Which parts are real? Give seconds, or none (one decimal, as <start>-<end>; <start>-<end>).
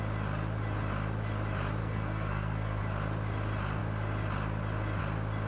0.0-1.8; 2.8-5.5